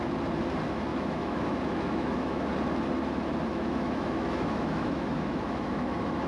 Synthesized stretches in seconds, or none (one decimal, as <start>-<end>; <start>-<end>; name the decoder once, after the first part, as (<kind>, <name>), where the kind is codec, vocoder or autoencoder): 0.9-2.5 (autoencoder, DAC-VAE); 3.5-6.3